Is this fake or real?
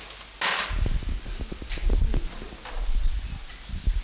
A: real